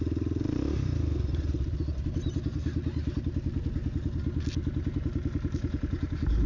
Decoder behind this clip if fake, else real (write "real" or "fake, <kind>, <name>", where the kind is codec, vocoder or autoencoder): real